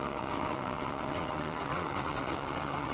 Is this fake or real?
fake